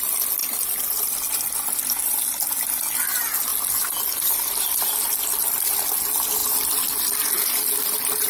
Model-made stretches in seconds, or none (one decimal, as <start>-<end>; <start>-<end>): none